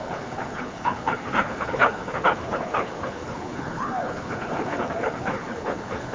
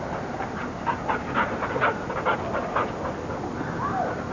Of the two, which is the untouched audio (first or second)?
second